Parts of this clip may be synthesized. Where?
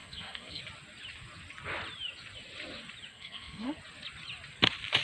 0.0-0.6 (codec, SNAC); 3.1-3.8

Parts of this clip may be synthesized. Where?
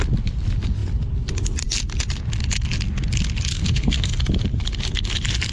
3.5-4.2 (codec, SNAC)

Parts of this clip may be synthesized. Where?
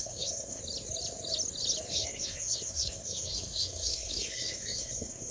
0.0-0.6 (codec, SNAC); 1.9-5.3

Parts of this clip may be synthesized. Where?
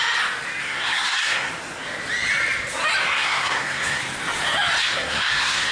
0.6-1.5 (codec, SNAC); 3.1-4.0; 4.8-5.7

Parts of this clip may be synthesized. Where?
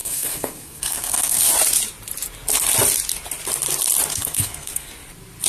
0.0-1.5 (codec, SNAC); 4.1-4.9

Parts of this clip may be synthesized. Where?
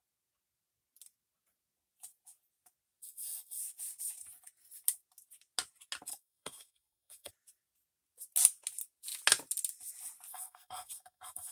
3.0-3.6 (codec, SNAC); 6.1-7.3; 10.3-11.5